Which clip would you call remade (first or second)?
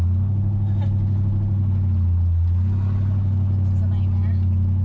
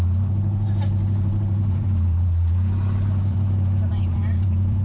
second